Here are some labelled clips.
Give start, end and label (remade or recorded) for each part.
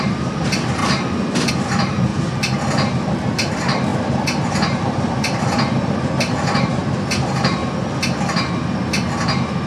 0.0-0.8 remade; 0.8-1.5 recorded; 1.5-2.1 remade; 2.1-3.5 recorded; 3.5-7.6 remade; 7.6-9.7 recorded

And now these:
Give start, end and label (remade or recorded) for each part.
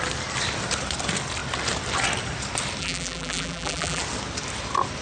0.0-2.8 recorded; 2.8-4.0 remade; 4.0-5.0 recorded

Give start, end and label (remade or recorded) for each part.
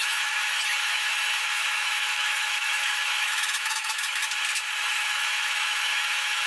0.0-4.2 remade; 4.2-4.9 recorded; 4.9-6.5 remade